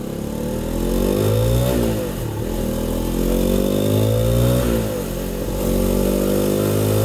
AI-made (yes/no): no